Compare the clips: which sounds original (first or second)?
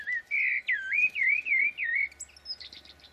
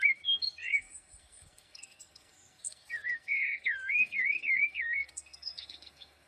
first